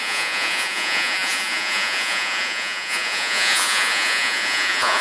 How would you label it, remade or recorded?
remade